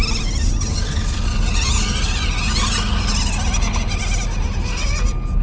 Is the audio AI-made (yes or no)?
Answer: no